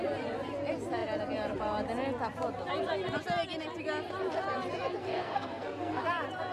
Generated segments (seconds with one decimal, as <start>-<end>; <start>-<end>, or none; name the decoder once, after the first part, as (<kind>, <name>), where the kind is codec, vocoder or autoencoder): 5.0-6.0 (codec, SNAC)

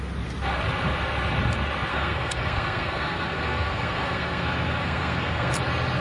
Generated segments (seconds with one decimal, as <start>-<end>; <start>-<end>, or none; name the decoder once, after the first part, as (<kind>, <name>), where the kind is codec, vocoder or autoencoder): 1.9-5.5 (codec, SNAC)

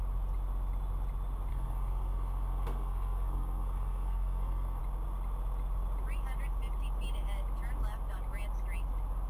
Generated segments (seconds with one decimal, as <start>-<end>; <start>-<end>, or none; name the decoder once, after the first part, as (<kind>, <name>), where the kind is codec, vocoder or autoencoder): 1.5-4.8 (codec, SNAC)

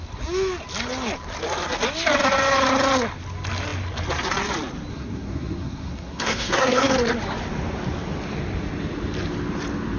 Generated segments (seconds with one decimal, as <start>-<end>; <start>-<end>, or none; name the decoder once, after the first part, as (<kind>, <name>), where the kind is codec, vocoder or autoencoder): 4.9-6.9 (codec, SNAC)

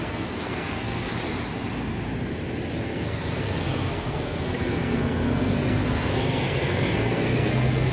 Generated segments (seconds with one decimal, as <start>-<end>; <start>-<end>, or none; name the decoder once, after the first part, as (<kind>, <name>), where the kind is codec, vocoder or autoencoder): 0.0-1.1 (codec, SNAC); 2.8-7.9